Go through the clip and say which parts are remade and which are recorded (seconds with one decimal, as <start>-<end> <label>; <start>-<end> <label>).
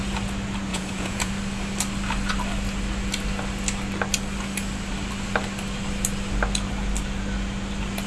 0.0-0.7 recorded; 0.7-1.3 remade; 1.3-8.1 recorded